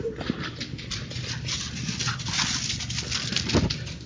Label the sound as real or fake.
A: real